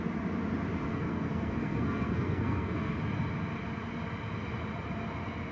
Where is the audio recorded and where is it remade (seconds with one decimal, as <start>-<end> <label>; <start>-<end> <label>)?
0.0-0.9 recorded; 0.9-3.0 remade; 3.0-5.5 recorded